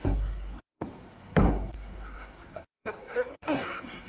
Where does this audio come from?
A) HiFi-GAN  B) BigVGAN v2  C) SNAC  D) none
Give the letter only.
C